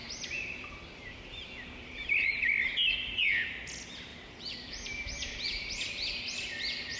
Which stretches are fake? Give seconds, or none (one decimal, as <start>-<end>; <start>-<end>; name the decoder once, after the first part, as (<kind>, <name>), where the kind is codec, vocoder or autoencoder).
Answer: 0.0-2.3 (vocoder, BigVGAN v2); 4.1-5.9